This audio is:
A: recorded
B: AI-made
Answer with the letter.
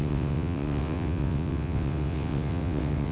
B